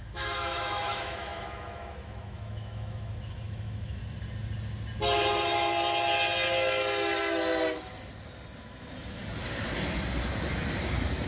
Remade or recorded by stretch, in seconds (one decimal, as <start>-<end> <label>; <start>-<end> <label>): 0.0-4.0 remade; 4.0-8.6 recorded; 8.6-9.2 remade; 9.2-11.3 recorded